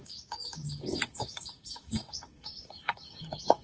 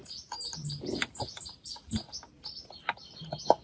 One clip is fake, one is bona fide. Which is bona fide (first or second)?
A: second